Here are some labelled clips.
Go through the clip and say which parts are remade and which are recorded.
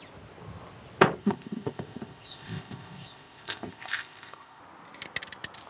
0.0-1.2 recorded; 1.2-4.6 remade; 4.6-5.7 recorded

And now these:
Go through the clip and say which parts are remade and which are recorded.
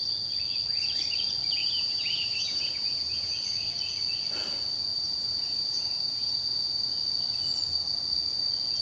0.0-1.6 recorded; 1.6-3.3 remade; 3.3-4.9 recorded; 4.9-6.9 remade; 6.9-8.8 recorded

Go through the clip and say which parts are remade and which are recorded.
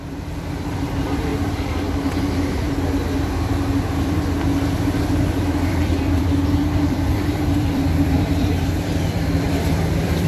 0.0-1.3 remade; 1.3-5.6 recorded; 5.6-10.3 remade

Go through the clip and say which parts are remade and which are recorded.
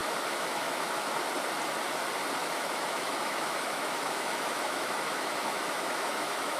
0.0-0.9 remade; 0.9-2.4 recorded; 2.4-6.6 remade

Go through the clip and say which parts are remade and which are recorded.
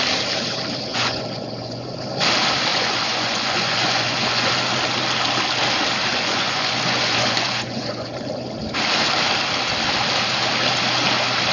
0.0-0.9 recorded; 0.9-2.0 remade; 2.0-2.7 recorded; 2.7-4.5 remade; 4.5-6.1 recorded; 6.1-8.1 remade; 8.1-11.5 recorded